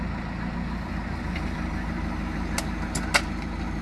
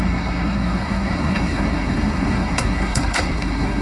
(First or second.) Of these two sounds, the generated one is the second